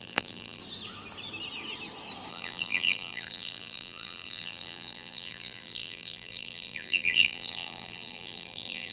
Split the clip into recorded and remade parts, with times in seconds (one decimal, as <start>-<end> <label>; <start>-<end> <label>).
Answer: 0.0-0.6 remade; 0.6-2.3 recorded; 2.3-8.9 remade